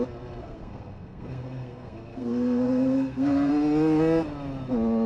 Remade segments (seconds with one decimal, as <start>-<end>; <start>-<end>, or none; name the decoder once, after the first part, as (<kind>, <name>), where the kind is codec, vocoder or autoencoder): 0.4-3.5 (codec, SNAC)

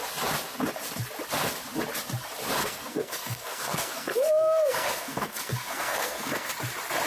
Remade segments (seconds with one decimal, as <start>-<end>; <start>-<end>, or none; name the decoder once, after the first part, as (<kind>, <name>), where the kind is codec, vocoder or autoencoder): 2.6-6.5 (codec, SNAC)

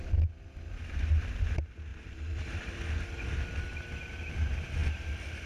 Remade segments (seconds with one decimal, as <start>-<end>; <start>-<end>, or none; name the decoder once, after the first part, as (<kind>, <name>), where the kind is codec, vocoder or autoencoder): 1.9-3.6 (vocoder, BigVGAN v2); 4.8-5.5

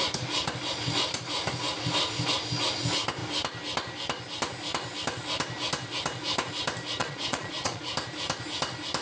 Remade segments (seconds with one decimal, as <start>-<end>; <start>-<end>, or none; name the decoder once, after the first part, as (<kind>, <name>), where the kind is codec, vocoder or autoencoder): 7.0-7.8 (vocoder, Vocos)

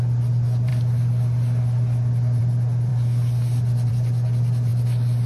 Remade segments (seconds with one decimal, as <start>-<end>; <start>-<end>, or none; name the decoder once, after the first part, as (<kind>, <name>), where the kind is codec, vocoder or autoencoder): none

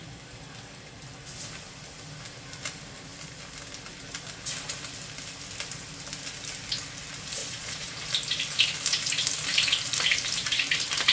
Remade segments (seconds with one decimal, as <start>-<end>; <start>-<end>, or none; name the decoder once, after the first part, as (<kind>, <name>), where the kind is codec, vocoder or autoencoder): 7.4-8.0 (vocoder, Vocos)